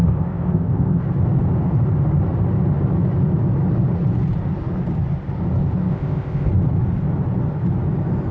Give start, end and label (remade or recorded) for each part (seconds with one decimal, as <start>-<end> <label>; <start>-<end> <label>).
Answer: 0.0-1.0 remade; 1.0-5.9 recorded; 5.9-6.5 remade; 6.5-8.3 recorded